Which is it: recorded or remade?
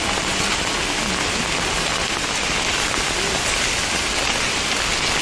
recorded